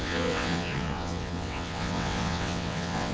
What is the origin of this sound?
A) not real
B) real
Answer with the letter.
A